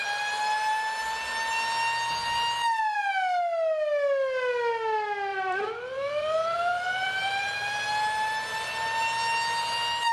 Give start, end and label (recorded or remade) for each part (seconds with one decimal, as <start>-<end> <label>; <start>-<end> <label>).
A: 0.0-5.3 recorded; 5.3-7.9 remade; 7.9-10.1 recorded

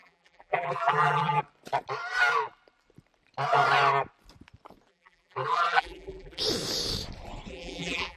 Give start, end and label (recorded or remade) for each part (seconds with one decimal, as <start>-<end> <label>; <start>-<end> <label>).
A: 0.0-1.4 remade; 1.4-4.9 recorded; 4.9-6.4 remade; 6.4-7.5 recorded; 7.5-8.2 remade

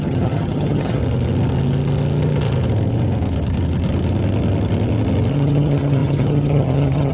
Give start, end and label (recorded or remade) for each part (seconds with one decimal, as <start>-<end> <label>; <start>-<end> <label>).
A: 0.0-1.0 remade; 1.0-5.3 recorded; 5.3-7.1 remade